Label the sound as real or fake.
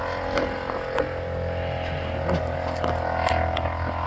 real